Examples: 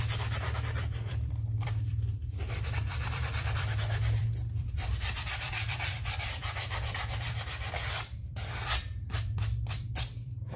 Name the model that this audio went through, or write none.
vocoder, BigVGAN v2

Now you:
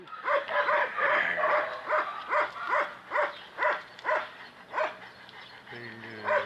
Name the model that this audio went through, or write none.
none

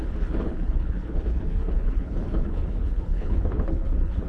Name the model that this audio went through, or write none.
codec, HILCodec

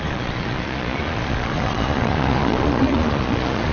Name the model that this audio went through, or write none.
vocoder, Vocos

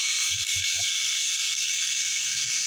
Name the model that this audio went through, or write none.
codec, SNAC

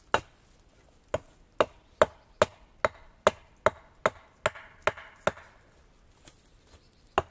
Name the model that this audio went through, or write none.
none